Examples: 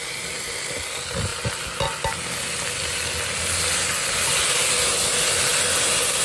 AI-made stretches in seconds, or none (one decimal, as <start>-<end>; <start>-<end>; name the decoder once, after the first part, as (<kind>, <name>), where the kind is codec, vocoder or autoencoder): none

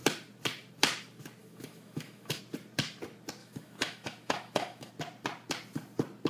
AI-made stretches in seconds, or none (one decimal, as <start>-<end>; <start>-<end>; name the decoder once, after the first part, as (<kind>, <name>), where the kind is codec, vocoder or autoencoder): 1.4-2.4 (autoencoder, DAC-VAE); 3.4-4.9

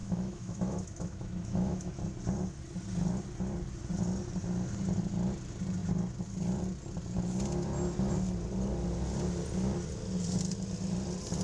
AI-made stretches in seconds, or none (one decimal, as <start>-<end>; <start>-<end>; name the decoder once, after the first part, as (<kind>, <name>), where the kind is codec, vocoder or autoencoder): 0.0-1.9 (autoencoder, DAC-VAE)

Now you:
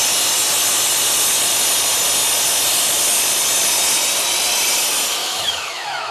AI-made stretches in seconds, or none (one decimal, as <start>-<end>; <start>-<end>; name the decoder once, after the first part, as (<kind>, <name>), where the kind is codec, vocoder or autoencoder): 5.2-6.1 (autoencoder, DAC-VAE)

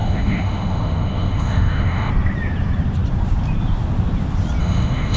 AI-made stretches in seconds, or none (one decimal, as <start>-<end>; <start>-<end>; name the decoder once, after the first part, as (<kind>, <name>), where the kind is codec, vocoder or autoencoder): 0.0-2.1 (autoencoder, DAC-VAE); 4.6-5.2

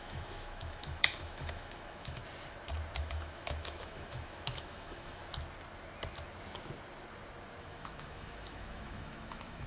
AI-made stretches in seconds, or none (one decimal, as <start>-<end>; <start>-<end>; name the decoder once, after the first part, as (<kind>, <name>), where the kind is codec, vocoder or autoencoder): 0.0-2.2 (autoencoder, DAC-VAE); 3.0-5.2; 7.6-9.7

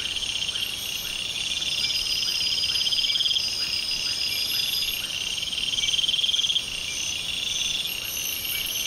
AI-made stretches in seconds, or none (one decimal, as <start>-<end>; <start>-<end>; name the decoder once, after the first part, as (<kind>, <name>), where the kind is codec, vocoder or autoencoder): none

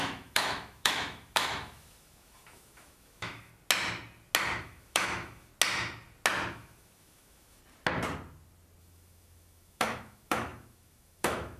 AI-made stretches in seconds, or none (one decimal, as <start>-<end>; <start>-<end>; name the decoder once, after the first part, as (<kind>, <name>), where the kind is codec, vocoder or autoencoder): 0.0-3.5 (autoencoder, DAC-VAE); 4.6-5.5; 6.5-7.6; 8.8-11.6